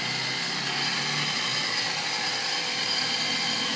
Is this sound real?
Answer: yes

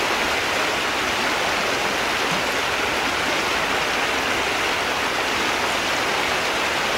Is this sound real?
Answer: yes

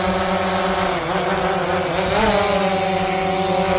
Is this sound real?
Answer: yes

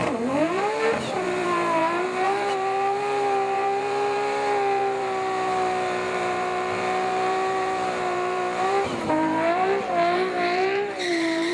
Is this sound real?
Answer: no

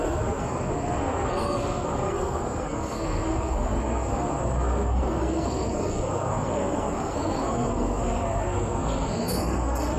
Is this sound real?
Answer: no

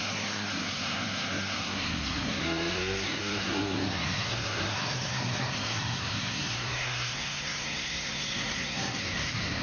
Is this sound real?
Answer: no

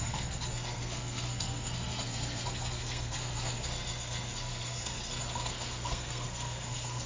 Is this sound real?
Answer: no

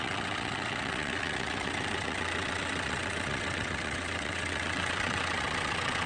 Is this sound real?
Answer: no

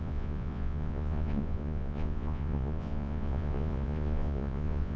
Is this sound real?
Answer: no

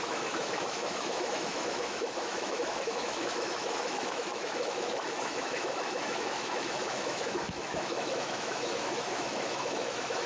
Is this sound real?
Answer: no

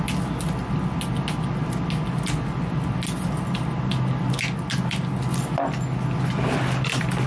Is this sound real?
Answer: yes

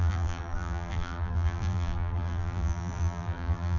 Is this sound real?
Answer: no